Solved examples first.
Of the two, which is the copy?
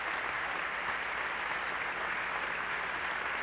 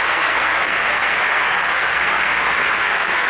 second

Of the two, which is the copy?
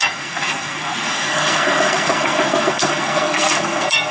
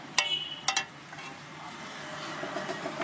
first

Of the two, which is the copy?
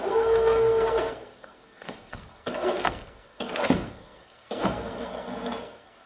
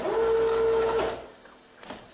first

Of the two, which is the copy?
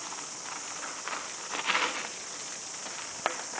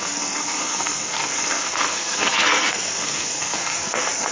second